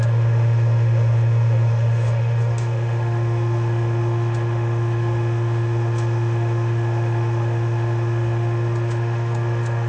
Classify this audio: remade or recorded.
remade